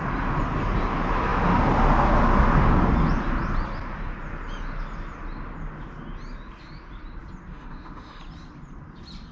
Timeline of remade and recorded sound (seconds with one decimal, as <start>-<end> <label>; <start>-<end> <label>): 0.0-7.5 recorded; 7.5-8.2 remade; 8.2-9.3 recorded